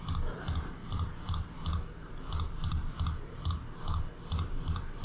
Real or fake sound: real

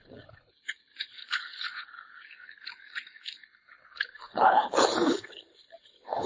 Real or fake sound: fake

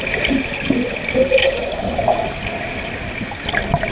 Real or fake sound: real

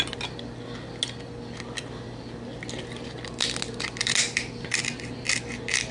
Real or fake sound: real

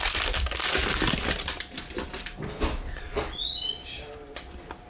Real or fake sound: real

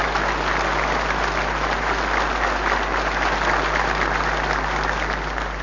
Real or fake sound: real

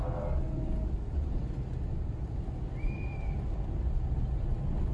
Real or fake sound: real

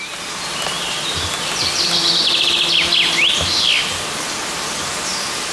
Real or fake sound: real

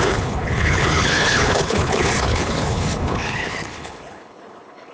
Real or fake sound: fake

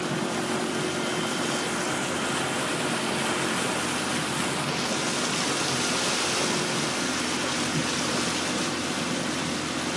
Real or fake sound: real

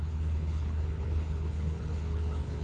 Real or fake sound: fake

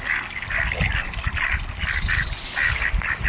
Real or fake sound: real